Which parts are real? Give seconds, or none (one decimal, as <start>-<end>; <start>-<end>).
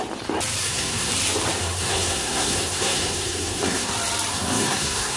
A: 0.0-0.6; 1.1-1.6; 3.9-4.3